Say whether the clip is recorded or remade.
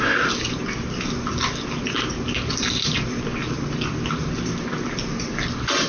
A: recorded